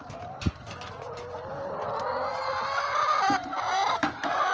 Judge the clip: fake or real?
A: real